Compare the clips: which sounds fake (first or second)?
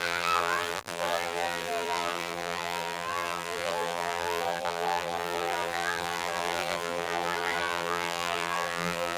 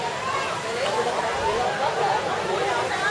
first